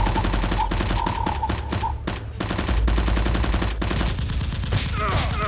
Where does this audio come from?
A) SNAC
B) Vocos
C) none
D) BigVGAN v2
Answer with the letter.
C